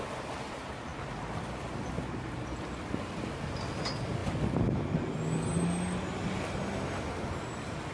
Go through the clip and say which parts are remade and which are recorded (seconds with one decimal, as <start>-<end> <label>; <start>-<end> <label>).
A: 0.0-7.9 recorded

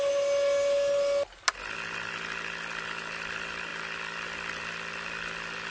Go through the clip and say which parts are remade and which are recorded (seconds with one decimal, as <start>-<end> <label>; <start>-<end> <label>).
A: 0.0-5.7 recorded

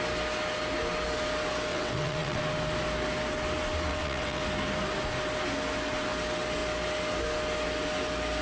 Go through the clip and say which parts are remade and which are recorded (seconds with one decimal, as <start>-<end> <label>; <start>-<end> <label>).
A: 0.0-1.7 recorded; 1.7-2.4 remade; 2.4-3.9 recorded; 3.9-4.4 remade; 4.4-8.4 recorded

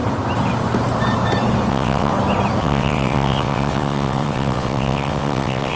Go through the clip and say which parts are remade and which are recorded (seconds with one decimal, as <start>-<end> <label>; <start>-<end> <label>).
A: 0.0-1.7 recorded; 1.7-2.1 remade; 2.1-2.6 recorded; 2.6-5.8 remade

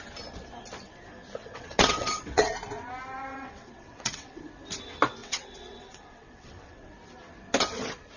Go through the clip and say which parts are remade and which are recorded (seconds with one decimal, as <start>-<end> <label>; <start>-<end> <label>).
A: 0.0-1.4 recorded; 1.4-2.5 remade; 2.5-3.3 recorded; 3.3-4.4 remade; 4.4-5.2 recorded; 5.2-6.9 remade; 6.9-8.2 recorded